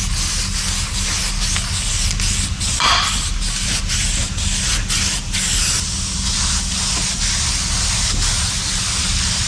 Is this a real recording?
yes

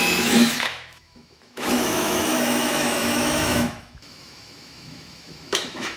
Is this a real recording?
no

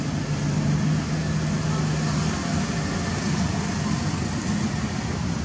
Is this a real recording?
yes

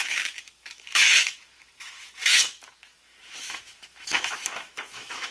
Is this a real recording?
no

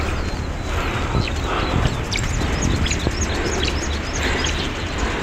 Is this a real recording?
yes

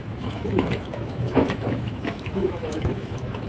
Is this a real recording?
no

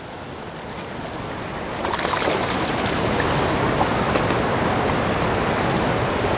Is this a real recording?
yes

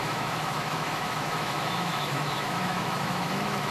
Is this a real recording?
no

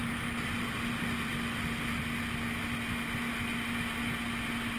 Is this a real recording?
yes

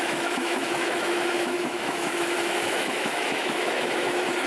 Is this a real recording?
no